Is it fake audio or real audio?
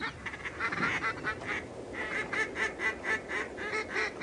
real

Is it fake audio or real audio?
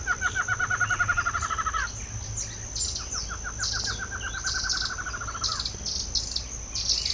real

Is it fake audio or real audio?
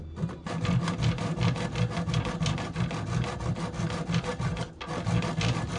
real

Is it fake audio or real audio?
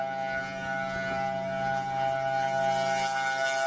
real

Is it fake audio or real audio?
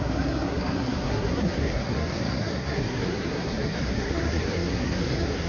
fake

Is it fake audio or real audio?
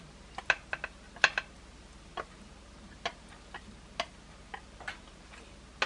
real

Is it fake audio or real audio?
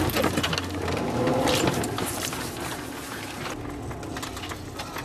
real